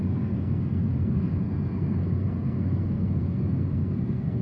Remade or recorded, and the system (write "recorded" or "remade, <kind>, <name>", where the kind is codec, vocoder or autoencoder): remade, codec, SNAC